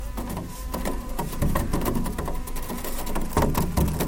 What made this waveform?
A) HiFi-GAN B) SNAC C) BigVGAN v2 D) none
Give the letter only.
D